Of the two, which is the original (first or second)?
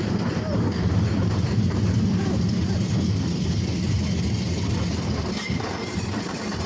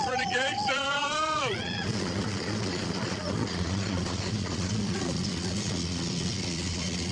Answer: first